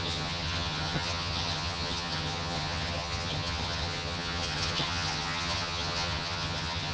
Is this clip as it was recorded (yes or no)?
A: no